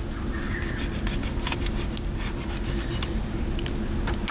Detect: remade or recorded recorded